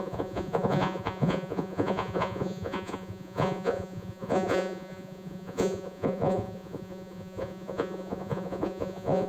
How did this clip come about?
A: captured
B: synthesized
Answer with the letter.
B